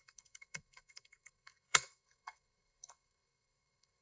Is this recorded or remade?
remade